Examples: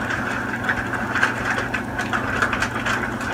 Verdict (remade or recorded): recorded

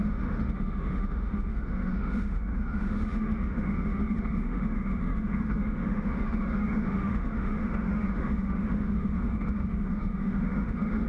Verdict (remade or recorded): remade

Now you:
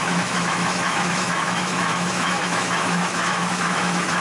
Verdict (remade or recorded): remade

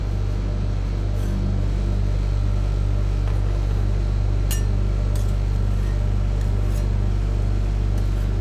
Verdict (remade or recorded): recorded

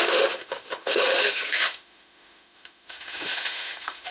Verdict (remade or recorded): remade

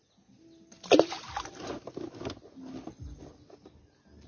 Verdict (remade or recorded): recorded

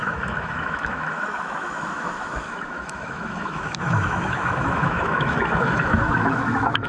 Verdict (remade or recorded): remade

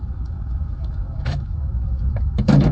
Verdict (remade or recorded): remade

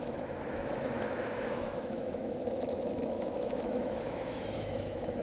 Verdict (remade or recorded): remade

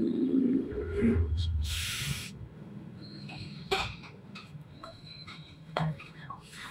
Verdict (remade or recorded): remade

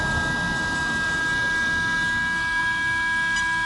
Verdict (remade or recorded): recorded